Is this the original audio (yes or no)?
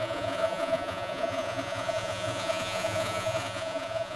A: no